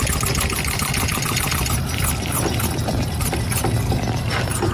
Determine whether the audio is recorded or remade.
recorded